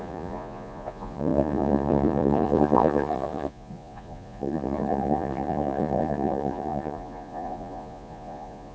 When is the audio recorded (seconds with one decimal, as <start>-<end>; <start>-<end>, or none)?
none